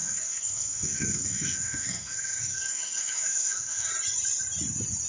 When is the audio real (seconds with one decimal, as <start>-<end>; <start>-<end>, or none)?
3.9-5.1